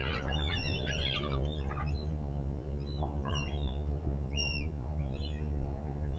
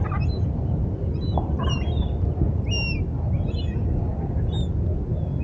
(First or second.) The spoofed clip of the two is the first